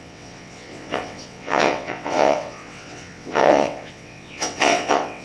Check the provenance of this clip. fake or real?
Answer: fake